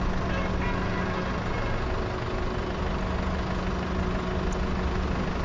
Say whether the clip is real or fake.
real